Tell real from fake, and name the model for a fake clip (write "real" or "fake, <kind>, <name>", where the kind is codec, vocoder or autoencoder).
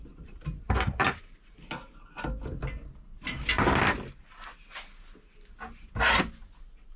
real